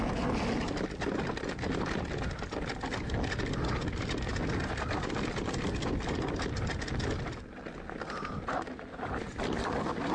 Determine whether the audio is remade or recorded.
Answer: recorded